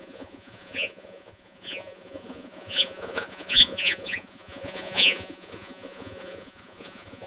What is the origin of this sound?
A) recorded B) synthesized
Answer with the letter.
B